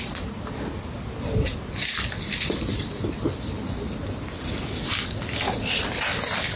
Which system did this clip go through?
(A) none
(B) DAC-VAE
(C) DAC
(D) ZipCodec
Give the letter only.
A